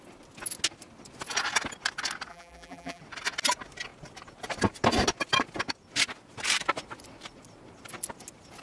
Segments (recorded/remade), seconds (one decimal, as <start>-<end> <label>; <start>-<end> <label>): 0.0-2.3 recorded; 2.3-3.0 remade; 3.0-8.6 recorded